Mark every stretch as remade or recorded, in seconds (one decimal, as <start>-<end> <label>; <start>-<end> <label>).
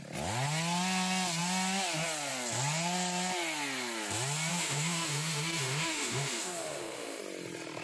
0.0-4.5 recorded; 4.5-7.2 remade; 7.2-7.8 recorded